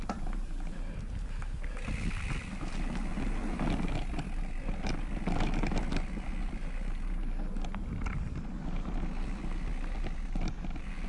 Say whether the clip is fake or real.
real